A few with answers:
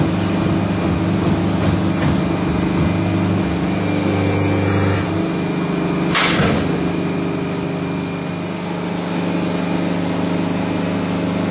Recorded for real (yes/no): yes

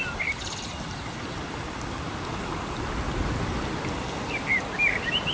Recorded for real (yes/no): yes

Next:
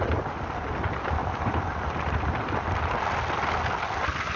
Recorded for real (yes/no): yes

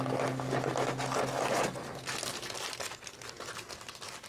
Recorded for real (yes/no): yes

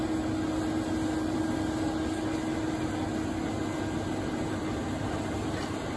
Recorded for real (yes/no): yes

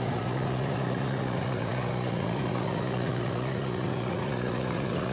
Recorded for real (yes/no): no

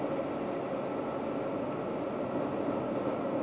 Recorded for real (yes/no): yes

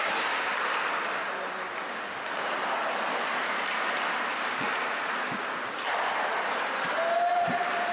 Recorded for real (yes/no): yes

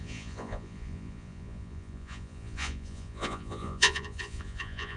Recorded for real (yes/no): no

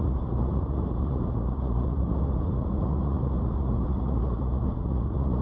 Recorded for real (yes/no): no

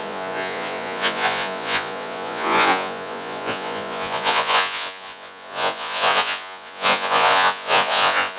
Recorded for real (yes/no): no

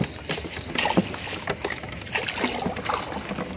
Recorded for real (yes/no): yes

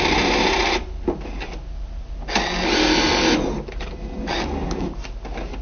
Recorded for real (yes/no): yes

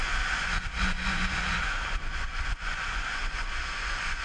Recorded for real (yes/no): no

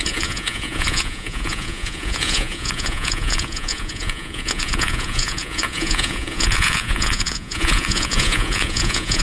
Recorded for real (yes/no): no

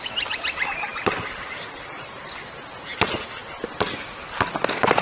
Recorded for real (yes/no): yes